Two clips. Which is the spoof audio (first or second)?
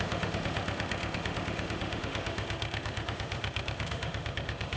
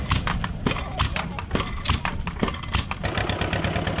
first